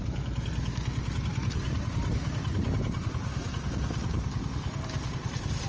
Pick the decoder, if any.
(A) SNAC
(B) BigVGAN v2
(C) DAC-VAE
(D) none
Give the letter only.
D